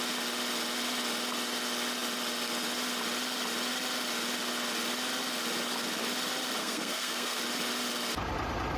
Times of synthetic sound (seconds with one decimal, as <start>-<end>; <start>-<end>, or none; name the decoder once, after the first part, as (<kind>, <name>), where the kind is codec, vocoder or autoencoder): 6.6-7.4 (codec, SNAC)